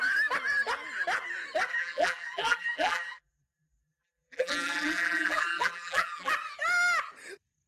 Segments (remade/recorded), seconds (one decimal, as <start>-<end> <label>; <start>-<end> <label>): 0.0-1.7 recorded; 1.7-6.3 remade; 6.3-7.7 recorded